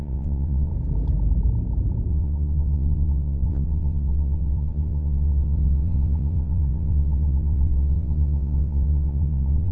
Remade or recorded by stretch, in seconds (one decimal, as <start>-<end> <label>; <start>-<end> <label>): 0.0-0.7 remade; 0.7-2.1 recorded; 2.1-9.7 remade